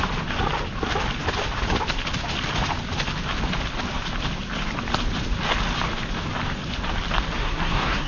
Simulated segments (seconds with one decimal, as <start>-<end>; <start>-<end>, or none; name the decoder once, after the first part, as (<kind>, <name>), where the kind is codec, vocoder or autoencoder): 7.4-8.1 (codec, SNAC)